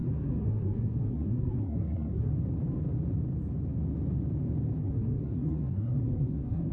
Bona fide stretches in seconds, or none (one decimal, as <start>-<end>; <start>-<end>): 2.3-4.8